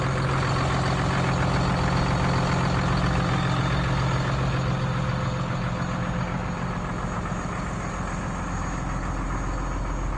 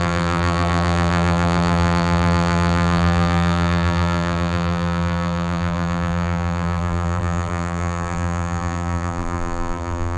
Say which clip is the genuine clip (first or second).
first